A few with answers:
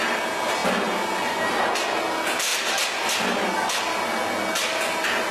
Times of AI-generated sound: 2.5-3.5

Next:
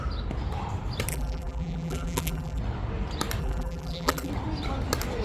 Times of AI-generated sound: 1.1-2.6; 3.4-4.3

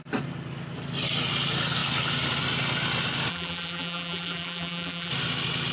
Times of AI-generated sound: 3.3-5.1

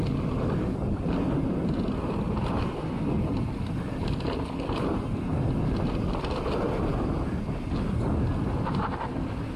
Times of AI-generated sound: none